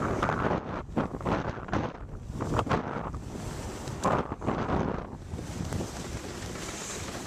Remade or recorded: recorded